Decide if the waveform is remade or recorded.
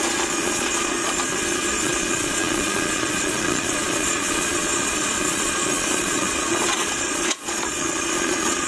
remade